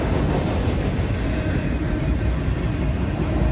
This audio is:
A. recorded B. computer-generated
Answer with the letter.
A